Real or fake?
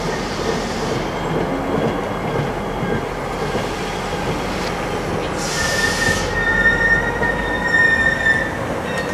real